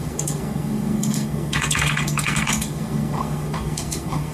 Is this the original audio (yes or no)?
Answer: no